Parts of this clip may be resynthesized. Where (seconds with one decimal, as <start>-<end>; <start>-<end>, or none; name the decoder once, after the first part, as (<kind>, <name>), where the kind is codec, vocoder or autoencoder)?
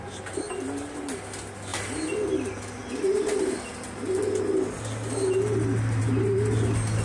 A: 0.0-1.7 (vocoder, BigVGAN v2); 2.3-7.0